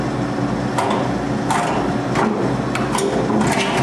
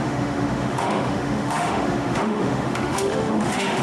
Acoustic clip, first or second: first